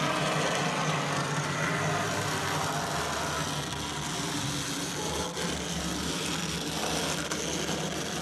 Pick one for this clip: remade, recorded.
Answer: recorded